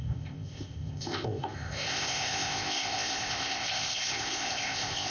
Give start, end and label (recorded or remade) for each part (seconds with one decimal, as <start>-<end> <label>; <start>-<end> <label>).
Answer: 0.0-5.1 remade